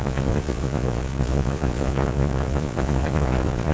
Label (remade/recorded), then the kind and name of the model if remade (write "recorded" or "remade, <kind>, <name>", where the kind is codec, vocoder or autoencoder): remade, vocoder, Vocos